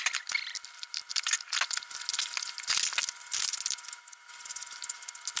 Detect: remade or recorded recorded